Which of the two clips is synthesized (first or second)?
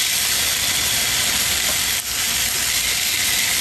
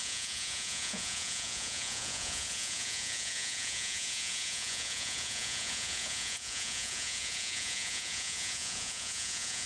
second